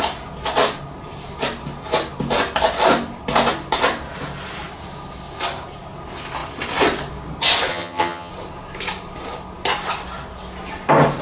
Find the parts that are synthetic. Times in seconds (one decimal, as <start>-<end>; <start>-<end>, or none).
7.7-8.3